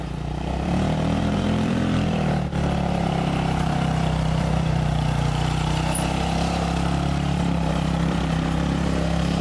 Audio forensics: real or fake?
fake